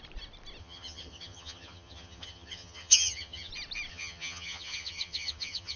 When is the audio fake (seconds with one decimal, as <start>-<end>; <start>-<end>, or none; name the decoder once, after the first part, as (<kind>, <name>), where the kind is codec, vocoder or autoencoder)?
0.6-3.5 (vocoder, HiFi-GAN); 3.9-5.8